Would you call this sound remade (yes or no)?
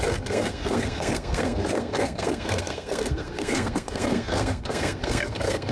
yes